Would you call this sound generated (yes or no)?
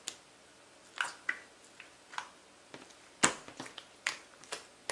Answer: no